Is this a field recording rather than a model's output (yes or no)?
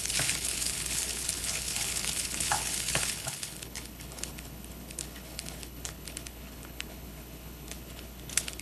no